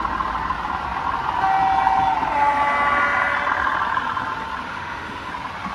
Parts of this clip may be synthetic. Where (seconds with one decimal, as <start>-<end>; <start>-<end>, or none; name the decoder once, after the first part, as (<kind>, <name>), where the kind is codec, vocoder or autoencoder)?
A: 4.7-5.3 (autoencoder, DAC-VAE)